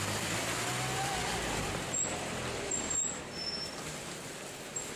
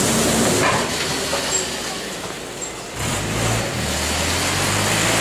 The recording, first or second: second